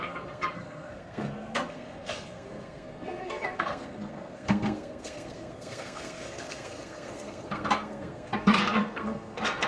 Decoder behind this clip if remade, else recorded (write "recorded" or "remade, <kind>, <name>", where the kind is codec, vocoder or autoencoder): remade, codec, SNAC